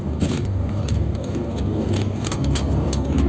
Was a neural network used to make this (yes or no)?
yes